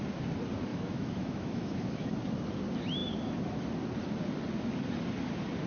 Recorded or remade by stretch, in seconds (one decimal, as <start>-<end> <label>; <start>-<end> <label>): 0.0-0.7 recorded; 0.7-2.1 remade; 2.1-5.7 recorded